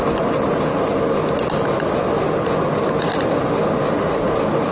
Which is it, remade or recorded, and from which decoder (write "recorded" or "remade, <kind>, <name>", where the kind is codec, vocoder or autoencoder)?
recorded